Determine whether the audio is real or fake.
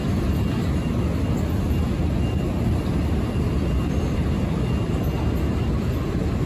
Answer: real